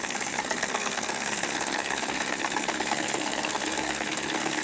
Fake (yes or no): yes